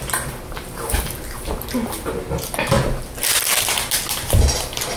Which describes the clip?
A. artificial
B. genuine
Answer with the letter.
B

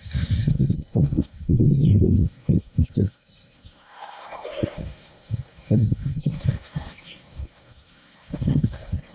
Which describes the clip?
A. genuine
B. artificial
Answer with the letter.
B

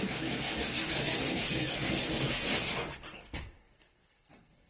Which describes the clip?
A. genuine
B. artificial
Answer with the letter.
B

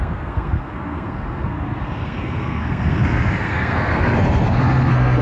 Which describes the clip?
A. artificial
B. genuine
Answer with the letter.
A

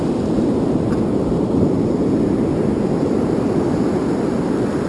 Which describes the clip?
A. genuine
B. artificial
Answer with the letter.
A